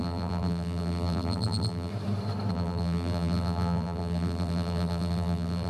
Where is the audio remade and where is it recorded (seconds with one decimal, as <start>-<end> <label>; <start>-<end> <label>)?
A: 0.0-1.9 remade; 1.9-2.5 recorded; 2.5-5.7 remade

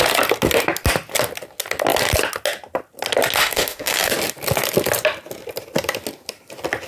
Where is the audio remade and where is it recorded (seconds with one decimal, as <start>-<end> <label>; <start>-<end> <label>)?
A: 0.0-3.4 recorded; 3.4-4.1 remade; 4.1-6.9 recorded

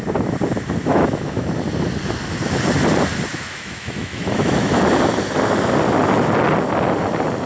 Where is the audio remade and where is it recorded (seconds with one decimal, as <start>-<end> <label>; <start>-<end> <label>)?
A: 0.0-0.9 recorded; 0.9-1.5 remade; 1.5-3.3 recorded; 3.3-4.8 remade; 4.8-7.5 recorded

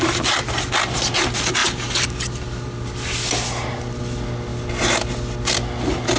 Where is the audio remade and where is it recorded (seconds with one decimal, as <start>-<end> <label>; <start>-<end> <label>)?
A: 0.0-1.6 recorded; 1.6-4.0 remade; 4.0-4.5 recorded; 4.5-5.1 remade; 5.1-6.2 recorded

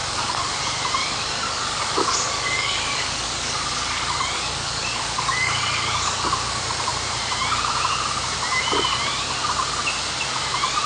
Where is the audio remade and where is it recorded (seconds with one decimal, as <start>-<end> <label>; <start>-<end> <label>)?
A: 0.0-0.6 remade; 0.6-1.0 recorded; 1.0-6.3 remade; 6.3-10.9 recorded

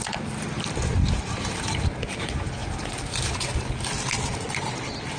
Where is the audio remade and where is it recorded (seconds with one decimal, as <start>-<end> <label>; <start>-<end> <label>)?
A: 0.0-5.2 recorded